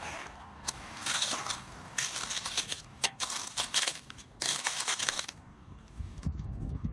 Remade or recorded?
remade